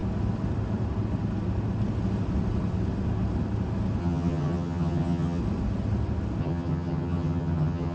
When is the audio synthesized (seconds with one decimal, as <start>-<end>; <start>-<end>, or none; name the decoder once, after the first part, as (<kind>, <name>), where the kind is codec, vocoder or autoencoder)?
4.0-5.4 (vocoder, HiFi-GAN); 6.4-7.9